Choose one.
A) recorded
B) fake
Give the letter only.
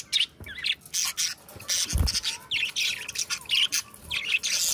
A